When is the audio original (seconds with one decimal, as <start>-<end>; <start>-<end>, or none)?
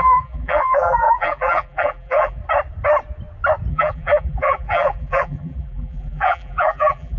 2.4-3.7